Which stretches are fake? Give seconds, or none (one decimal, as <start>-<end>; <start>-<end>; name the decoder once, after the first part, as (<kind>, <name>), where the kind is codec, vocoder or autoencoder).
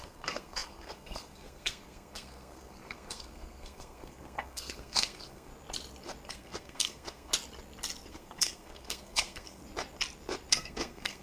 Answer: 0.0-5.5 (codec, SNAC); 6.3-7.3; 8.1-9.6; 10.5-11.2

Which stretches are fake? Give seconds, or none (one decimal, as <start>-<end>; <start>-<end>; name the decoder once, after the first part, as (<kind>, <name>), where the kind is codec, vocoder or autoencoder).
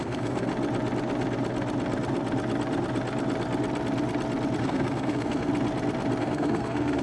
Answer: 0.0-0.5 (codec, SNAC); 4.6-5.5; 6.2-7.0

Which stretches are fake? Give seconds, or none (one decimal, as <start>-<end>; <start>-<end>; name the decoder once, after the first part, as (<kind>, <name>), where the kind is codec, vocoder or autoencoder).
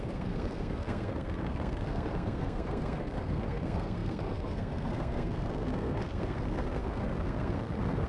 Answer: 0.0-8.1 (codec, SNAC)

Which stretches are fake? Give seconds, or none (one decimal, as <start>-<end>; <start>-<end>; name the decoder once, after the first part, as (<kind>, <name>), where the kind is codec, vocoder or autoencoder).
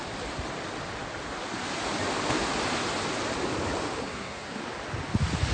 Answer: 4.0-4.6 (codec, SNAC)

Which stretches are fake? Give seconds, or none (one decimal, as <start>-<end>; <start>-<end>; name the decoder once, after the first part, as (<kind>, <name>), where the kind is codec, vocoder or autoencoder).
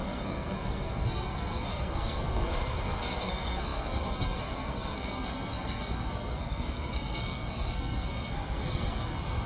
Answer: 0.0-9.5 (codec, SNAC)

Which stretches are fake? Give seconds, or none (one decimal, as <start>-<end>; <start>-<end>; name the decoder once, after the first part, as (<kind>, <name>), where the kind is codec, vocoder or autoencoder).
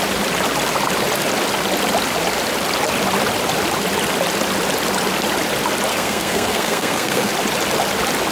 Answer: 5.9-7.3 (codec, SNAC)